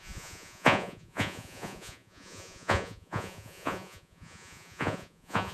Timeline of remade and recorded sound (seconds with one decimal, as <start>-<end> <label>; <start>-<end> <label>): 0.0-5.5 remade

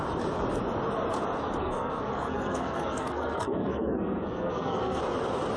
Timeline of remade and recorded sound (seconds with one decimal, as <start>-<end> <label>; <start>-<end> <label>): 0.0-1.6 recorded; 1.6-5.0 remade; 5.0-5.6 recorded

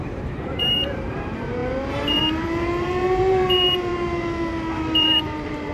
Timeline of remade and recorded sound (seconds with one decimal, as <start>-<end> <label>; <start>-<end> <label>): 0.0-3.9 remade; 3.9-4.8 recorded; 4.8-5.7 remade

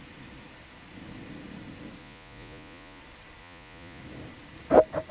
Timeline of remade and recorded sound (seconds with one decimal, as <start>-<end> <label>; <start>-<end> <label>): 0.0-2.0 recorded; 2.0-3.0 remade; 3.0-3.4 recorded; 3.4-4.0 remade; 4.0-5.1 recorded

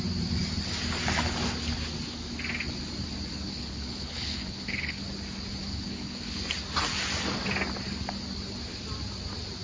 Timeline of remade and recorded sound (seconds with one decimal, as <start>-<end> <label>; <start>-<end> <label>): 0.0-3.3 recorded; 3.3-5.0 remade; 5.0-5.6 recorded; 5.6-6.4 remade; 6.4-9.6 recorded

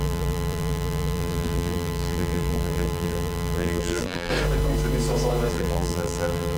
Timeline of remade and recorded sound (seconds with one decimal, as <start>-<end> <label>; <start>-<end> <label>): 0.0-4.3 remade; 4.3-5.5 recorded; 5.5-6.6 remade